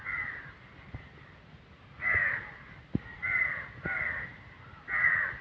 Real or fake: real